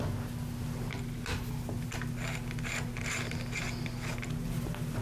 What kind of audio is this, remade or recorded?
recorded